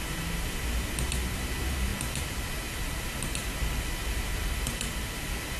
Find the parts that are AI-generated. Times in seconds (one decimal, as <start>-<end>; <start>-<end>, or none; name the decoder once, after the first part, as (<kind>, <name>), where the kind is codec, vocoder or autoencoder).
none